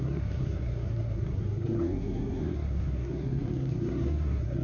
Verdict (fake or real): fake